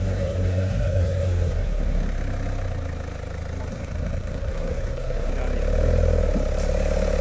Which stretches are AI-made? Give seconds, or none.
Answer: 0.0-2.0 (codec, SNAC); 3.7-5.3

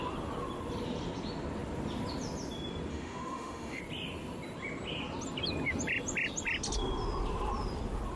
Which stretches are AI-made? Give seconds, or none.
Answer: 2.9-3.8 (autoencoder, DAC-VAE)

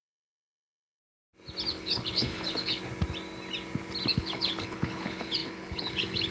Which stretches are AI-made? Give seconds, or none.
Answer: 0.0-1.0 (codec, HILCodec); 1.7-2.8; 4.1-6.3